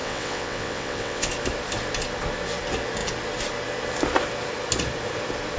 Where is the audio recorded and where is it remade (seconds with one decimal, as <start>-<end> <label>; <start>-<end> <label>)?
0.0-1.3 remade; 1.3-5.6 recorded